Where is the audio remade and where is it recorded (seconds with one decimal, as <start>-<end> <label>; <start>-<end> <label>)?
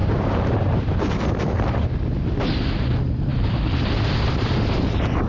0.0-1.0 remade; 1.0-3.3 recorded; 3.3-5.3 remade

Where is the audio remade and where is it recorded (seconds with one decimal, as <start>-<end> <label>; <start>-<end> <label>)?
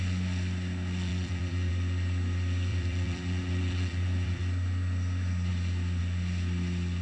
0.0-1.1 recorded; 1.1-1.7 remade; 1.7-2.7 recorded; 2.7-4.4 remade; 4.4-7.0 recorded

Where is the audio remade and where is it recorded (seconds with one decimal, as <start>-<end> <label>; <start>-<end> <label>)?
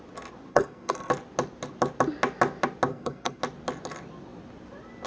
0.0-0.5 recorded; 0.5-1.1 remade; 1.1-2.9 recorded; 2.9-3.4 remade; 3.4-5.1 recorded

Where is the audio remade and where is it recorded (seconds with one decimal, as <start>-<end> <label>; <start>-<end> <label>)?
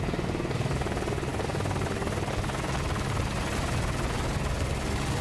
0.0-5.2 recorded